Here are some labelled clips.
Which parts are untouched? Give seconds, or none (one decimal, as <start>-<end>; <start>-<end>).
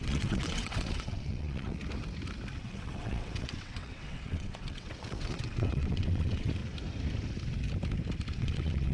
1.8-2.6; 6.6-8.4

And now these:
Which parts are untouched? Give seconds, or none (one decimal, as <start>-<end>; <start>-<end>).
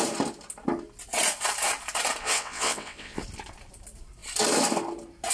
0.0-2.2; 3.2-5.3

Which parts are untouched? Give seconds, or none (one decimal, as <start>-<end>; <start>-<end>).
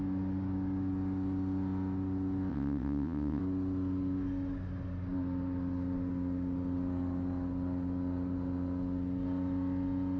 0.0-2.5; 3.4-10.2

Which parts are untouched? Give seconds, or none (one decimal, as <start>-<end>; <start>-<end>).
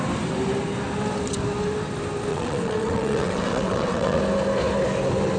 0.0-2.3; 4.2-5.4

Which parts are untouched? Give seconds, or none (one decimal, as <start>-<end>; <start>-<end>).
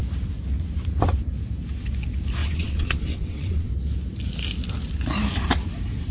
0.0-2.4; 3.7-6.1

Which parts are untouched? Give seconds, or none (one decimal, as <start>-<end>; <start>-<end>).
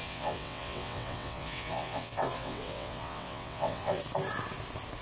4.0-5.0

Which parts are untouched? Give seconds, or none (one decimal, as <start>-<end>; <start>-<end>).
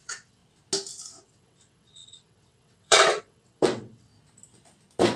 0.4-1.2; 4.1-5.2